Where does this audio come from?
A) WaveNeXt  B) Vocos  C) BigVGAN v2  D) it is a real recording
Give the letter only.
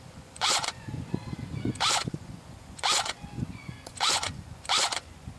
B